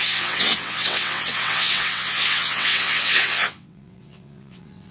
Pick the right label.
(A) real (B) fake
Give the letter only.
B